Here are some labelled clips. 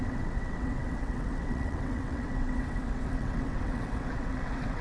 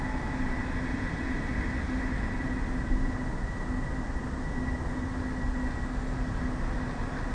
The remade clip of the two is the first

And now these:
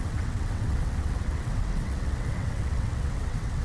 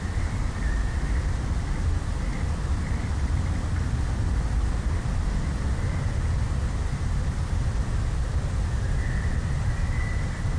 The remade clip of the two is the first